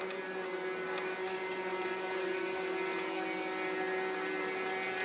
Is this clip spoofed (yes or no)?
no